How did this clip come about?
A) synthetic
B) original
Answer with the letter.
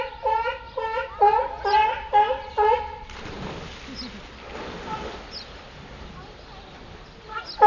B